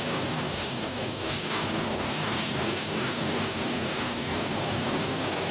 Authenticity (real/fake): fake